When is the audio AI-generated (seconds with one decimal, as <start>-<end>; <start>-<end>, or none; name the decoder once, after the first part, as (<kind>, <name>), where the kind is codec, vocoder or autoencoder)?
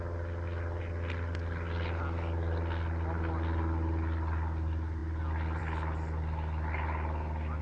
none